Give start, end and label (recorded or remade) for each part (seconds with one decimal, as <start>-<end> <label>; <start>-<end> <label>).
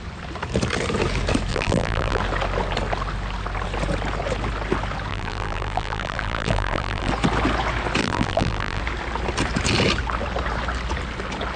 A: 0.0-1.5 recorded; 1.5-2.2 remade; 2.2-5.1 recorded; 5.1-7.1 remade; 7.1-8.0 recorded; 8.0-8.8 remade; 8.8-11.6 recorded